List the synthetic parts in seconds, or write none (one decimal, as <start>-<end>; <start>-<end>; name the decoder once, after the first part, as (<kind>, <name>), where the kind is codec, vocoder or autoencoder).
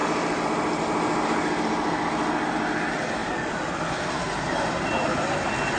none